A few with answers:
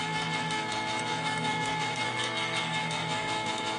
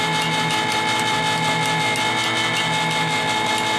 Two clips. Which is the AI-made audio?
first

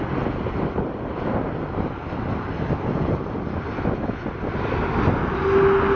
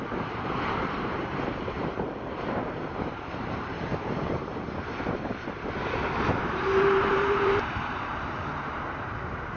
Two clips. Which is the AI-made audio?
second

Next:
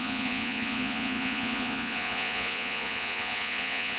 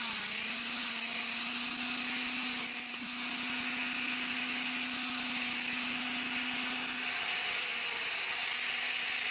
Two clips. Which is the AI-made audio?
first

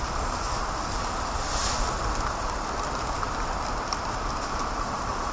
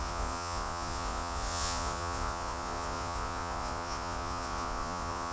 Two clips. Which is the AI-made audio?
second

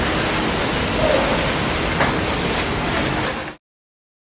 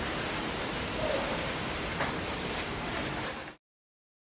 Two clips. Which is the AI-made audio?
second